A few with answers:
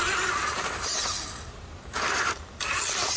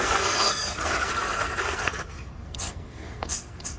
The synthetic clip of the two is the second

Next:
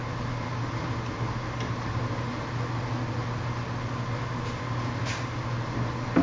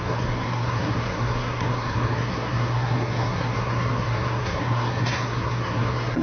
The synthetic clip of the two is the second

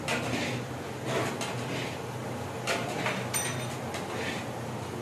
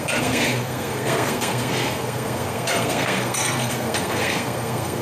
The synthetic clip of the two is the second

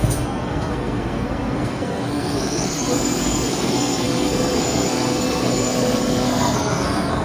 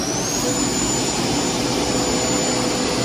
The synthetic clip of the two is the first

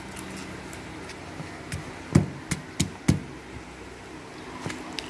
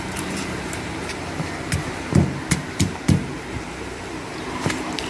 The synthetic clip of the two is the second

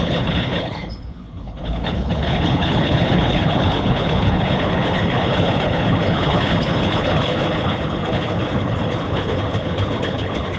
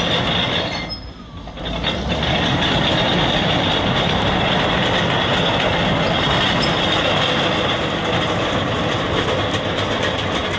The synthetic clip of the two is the first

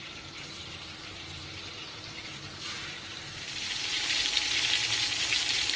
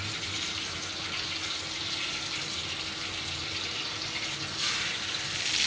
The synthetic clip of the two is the first